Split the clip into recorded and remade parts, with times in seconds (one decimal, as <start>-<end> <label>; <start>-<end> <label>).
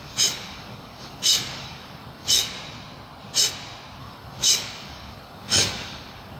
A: 0.0-2.4 remade; 2.4-4.0 recorded; 4.0-6.4 remade